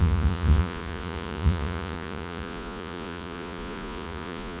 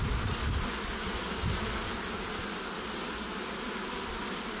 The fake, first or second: first